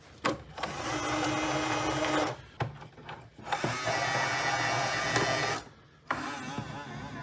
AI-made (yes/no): no